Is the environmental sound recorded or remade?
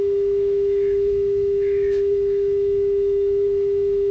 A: remade